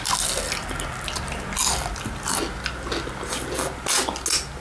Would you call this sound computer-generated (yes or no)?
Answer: no